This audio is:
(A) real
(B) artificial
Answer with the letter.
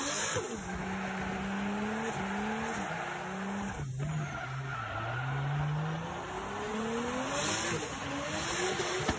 A